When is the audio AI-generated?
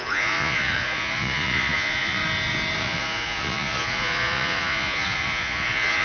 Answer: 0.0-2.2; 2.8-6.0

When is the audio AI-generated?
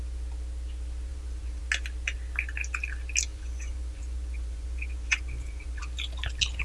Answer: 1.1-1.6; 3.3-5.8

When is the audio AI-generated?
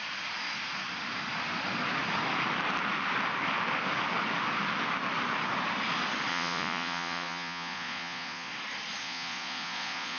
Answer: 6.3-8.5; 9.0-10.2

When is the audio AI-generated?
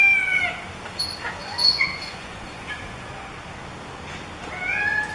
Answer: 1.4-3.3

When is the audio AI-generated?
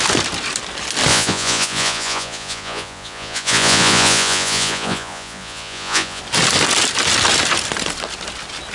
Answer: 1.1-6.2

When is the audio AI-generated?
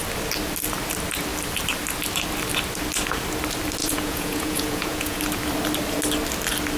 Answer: 3.8-5.2